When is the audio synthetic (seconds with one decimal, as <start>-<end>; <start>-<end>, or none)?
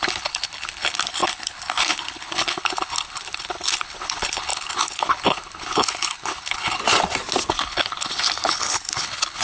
0.0-6.8; 7.5-9.4